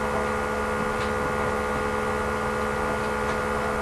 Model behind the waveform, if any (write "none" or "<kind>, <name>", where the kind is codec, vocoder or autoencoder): none